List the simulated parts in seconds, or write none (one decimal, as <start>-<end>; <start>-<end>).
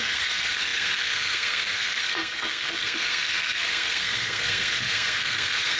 0.0-5.8